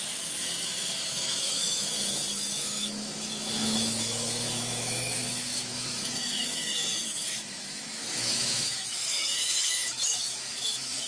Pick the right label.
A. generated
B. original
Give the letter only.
A